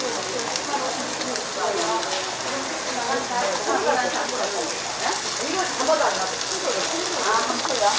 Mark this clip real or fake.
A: real